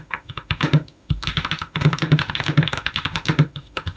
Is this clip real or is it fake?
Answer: fake